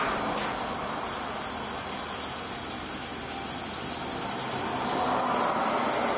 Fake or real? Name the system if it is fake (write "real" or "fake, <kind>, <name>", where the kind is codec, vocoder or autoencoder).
real